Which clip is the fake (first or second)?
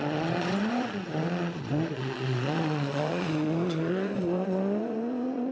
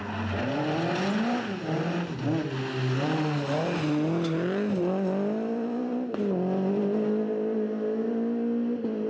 first